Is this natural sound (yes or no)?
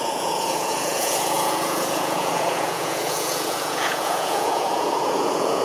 no